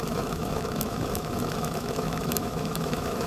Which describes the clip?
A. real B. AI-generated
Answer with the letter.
B